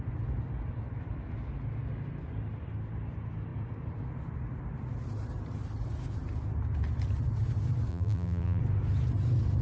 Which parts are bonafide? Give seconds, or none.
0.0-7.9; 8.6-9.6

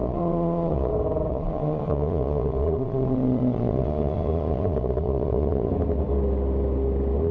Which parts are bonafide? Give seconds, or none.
0.9-1.3; 5.7-7.3

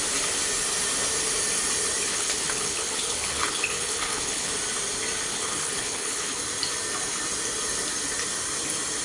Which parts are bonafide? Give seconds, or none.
0.0-2.1; 4.5-5.3; 6.4-9.0